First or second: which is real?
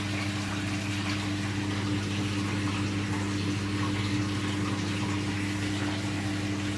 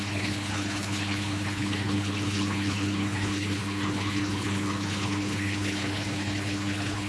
first